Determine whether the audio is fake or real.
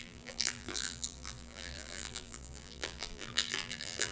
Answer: fake